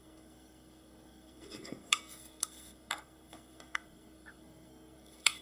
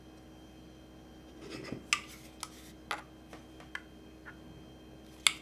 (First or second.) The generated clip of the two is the first